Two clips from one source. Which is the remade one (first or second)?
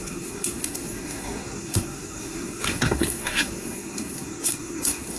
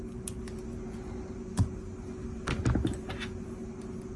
first